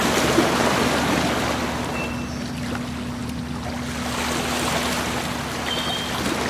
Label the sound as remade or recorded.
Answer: recorded